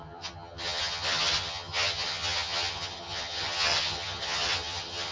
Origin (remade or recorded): remade